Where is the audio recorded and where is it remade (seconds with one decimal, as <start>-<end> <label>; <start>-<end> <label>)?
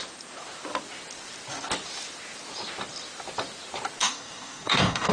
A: 0.0-4.0 recorded; 4.0-5.1 remade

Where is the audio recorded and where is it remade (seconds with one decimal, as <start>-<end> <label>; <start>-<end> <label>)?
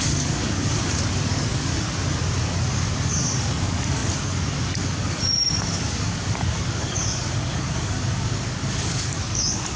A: 0.0-1.7 remade; 1.7-2.6 recorded; 2.6-9.8 remade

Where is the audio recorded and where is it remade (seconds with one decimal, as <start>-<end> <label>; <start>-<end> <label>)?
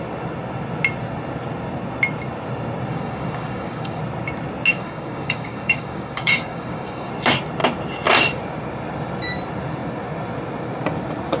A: 0.0-2.9 recorded; 2.9-4.0 remade; 4.0-4.7 recorded; 4.7-7.1 remade; 7.1-11.4 recorded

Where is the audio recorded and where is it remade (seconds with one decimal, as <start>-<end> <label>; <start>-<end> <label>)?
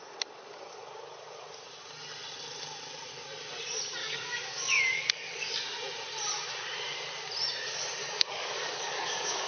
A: 0.0-4.0 recorded; 4.0-5.6 remade; 5.6-8.0 recorded; 8.0-9.5 remade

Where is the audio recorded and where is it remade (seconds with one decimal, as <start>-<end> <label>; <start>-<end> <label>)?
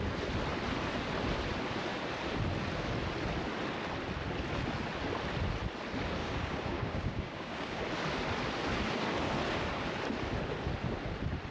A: 0.0-6.2 recorded; 6.2-7.8 remade; 7.8-11.5 recorded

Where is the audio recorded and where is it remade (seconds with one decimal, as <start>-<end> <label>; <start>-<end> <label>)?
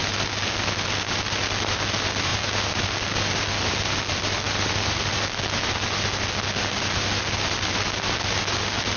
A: 0.0-9.0 recorded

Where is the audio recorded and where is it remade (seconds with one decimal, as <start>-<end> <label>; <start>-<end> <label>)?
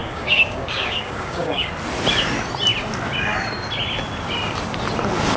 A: 0.0-1.7 remade; 1.7-5.4 recorded